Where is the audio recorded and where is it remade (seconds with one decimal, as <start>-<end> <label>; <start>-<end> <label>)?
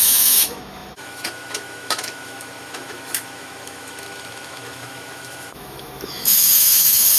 0.0-7.2 remade